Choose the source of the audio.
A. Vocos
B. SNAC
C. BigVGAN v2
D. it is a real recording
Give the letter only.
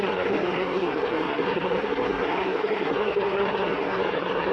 B